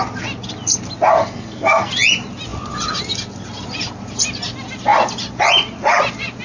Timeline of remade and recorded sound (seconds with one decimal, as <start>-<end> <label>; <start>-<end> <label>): 0.0-1.2 recorded; 1.2-1.9 remade; 1.9-6.4 recorded